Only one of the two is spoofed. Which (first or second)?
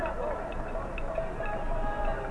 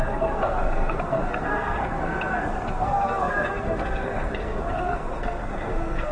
second